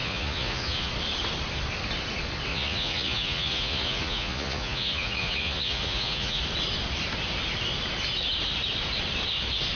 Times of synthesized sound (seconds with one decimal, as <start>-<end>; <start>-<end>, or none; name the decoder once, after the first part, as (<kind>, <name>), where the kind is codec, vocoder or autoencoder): 0.0-0.9 (vocoder, Vocos); 2.5-6.4